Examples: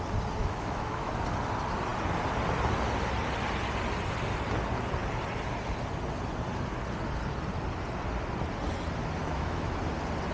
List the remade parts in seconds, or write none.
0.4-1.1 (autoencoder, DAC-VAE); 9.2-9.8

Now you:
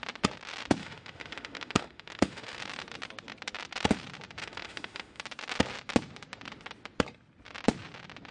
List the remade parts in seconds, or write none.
0.8-2.6 (autoencoder, DAC-VAE); 4.4-5.2

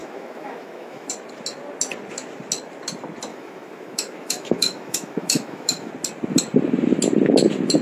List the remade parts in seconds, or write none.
0.0-1.1 (autoencoder, DAC-VAE); 3.3-5.9

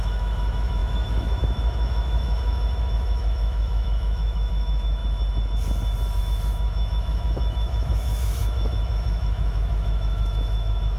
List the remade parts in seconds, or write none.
0.0-5.0 (autoencoder, DAC-VAE); 6.2-11.0